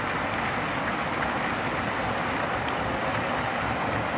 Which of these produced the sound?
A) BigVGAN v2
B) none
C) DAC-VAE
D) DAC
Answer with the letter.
A